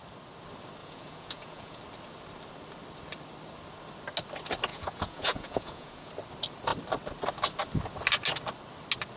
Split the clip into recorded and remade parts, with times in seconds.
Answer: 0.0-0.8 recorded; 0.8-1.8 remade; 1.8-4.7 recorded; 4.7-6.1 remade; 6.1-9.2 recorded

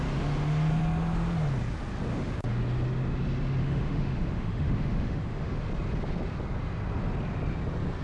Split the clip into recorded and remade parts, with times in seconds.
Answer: 0.0-2.1 recorded; 2.1-2.6 remade; 2.6-3.6 recorded; 3.6-5.6 remade; 5.6-8.0 recorded

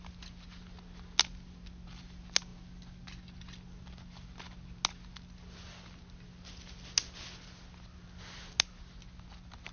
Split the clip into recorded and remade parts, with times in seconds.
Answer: 0.0-9.7 recorded

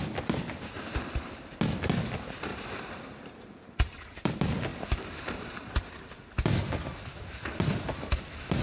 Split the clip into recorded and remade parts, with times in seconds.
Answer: 0.0-2.5 recorded; 2.5-4.3 remade; 4.3-4.7 recorded; 4.7-5.8 remade; 5.8-8.6 recorded

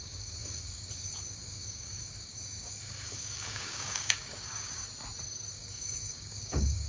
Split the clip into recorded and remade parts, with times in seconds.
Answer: 0.0-4.8 remade; 4.8-5.5 recorded; 5.5-6.9 remade